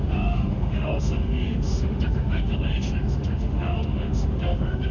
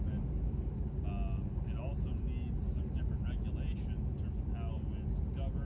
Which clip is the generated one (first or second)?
first